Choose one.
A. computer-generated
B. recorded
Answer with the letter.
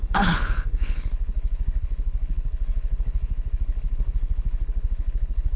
A